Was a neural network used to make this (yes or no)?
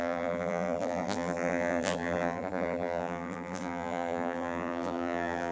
yes